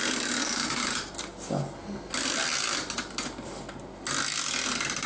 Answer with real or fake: real